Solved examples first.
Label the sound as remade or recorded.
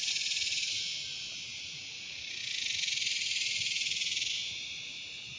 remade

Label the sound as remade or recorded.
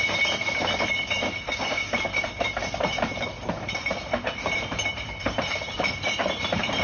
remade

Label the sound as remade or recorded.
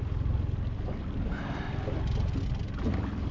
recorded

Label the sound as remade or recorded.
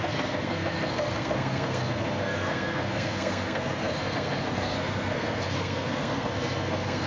remade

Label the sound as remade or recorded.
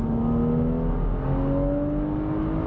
recorded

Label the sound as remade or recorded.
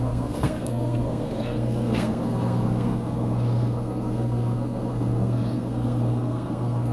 remade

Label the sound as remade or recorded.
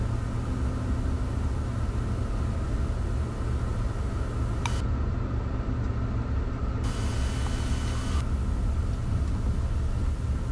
recorded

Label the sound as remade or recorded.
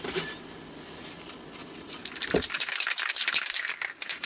recorded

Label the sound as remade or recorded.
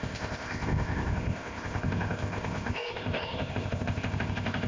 remade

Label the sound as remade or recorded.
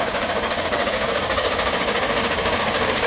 remade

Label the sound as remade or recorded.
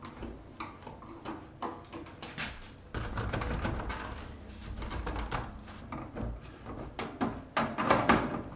recorded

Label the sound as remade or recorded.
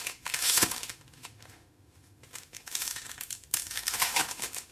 remade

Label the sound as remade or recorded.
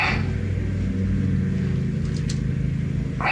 recorded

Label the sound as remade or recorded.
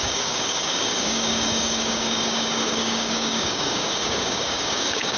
remade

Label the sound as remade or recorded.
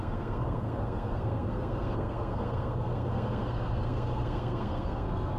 remade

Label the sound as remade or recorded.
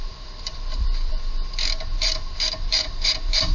remade